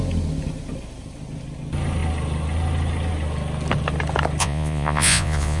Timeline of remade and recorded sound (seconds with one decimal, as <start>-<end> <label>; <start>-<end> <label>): 0.0-4.4 recorded; 4.4-5.6 remade